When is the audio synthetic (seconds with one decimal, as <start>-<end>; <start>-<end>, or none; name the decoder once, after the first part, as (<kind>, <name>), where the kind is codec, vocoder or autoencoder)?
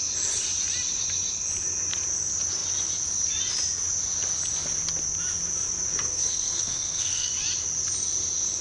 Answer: 5.9-7.3 (codec, SNAC)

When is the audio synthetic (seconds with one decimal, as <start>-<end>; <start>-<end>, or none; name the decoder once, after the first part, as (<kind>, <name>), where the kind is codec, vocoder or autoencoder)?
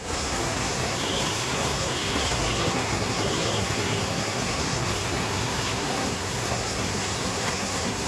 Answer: 0.0-8.1 (codec, SNAC)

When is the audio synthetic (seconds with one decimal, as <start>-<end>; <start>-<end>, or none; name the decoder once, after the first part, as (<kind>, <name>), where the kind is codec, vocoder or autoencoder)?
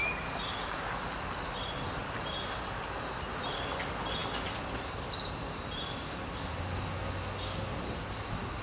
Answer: 2.0-2.6 (vocoder, BigVGAN v2)